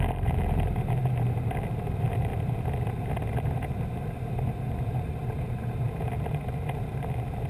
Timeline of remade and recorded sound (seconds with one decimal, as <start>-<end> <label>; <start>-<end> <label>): 0.0-2.3 remade; 2.3-3.6 recorded; 3.6-7.5 remade